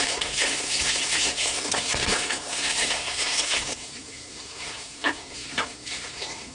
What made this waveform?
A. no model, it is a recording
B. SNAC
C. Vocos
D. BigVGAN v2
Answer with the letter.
B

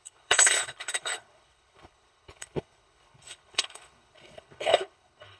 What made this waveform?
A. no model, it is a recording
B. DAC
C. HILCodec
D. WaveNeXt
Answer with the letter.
C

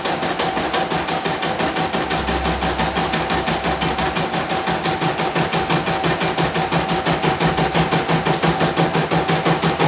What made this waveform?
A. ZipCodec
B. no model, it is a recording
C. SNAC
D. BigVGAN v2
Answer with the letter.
B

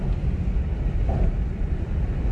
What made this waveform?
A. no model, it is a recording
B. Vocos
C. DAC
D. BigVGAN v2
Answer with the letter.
A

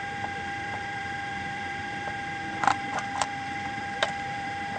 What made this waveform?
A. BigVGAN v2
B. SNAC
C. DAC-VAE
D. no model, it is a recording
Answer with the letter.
A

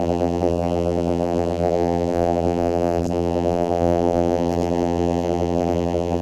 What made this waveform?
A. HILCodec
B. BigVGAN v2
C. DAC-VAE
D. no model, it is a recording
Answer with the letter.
B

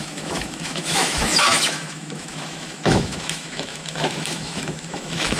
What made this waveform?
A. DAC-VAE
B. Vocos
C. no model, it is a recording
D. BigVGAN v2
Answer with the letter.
A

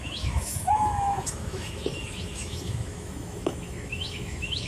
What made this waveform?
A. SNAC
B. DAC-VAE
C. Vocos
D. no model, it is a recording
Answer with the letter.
B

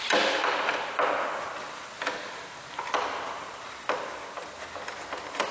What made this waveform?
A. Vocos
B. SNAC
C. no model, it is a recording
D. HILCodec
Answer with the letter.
C